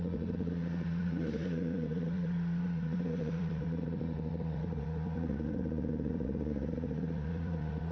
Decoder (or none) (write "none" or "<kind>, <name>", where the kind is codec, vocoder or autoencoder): vocoder, Vocos